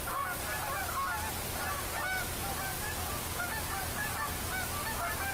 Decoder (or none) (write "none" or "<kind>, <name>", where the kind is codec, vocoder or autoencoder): none